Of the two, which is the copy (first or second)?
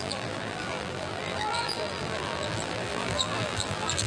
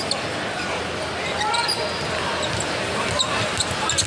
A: first